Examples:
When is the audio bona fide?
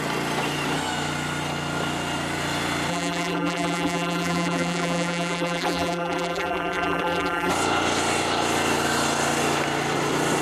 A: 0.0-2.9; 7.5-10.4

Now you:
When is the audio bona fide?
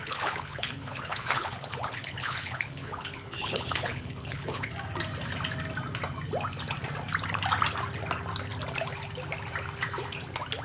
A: 4.7-10.6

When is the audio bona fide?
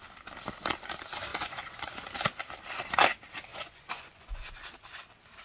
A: 0.0-1.3; 2.1-3.5; 4.6-5.4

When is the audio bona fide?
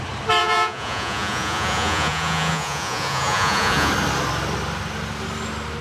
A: 0.0-0.4; 3.9-5.8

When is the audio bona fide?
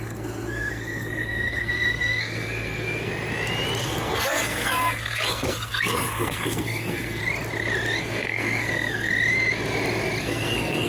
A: 3.1-3.8; 7.2-8.0; 9.1-10.2